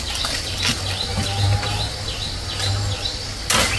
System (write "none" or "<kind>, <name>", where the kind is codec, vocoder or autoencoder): none